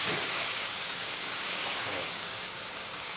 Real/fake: fake